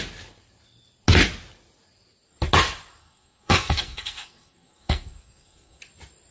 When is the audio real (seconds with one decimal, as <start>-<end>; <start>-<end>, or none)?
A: 0.0-3.0; 5.8-6.3